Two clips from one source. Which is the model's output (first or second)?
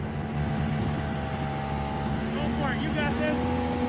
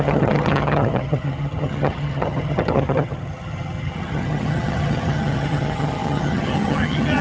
second